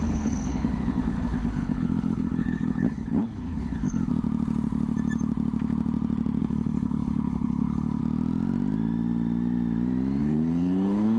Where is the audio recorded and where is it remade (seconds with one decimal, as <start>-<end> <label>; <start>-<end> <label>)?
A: 0.0-4.1 remade; 4.1-6.4 recorded; 6.4-8.0 remade; 8.0-10.2 recorded; 10.2-11.2 remade